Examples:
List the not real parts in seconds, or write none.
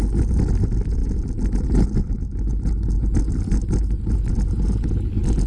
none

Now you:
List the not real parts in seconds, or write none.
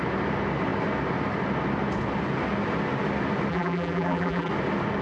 3.5-4.5 (vocoder, BigVGAN v2)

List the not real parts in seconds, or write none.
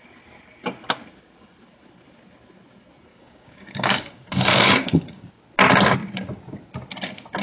3.1-5.3 (codec, DAC)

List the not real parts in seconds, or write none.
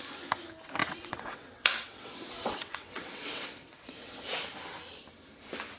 0.8-4.3 (vocoder, WaveNeXt)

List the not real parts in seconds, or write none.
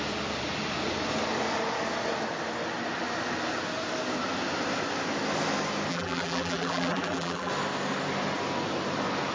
5.9-7.5 (vocoder, BigVGAN v2)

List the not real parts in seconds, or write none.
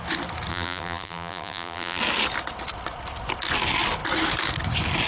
0.5-2.0 (vocoder, BigVGAN v2)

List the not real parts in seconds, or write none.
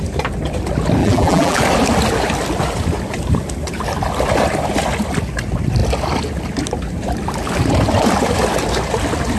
1.0-1.6 (vocoder, BigVGAN v2)